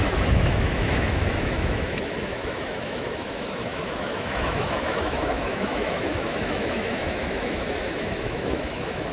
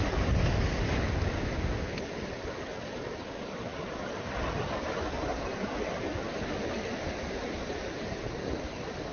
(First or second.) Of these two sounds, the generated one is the first